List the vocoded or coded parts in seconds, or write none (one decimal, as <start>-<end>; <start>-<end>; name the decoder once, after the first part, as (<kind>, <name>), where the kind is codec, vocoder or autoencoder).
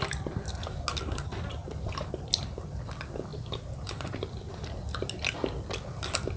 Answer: 1.6-2.8 (vocoder, BigVGAN v2); 3.3-4.5